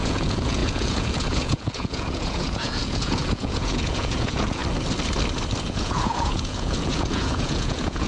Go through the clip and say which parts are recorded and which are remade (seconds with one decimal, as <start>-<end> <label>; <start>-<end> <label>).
0.0-4.6 remade; 4.6-5.7 recorded; 5.7-8.1 remade